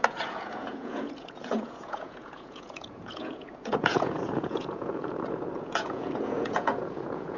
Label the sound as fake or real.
fake